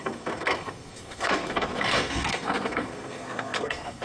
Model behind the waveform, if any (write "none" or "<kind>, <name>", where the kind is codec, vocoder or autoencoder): codec, SNAC